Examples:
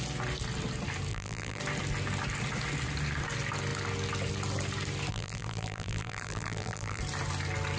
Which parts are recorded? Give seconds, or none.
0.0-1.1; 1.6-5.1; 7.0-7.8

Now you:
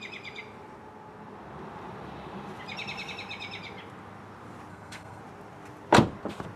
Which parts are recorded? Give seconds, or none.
0.0-4.7; 5.2-6.6